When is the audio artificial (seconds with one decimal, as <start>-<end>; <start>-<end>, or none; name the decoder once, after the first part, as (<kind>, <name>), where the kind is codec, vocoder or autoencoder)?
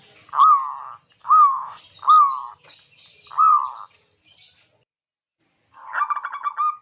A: 1.2-1.8 (autoencoder, DAC-VAE)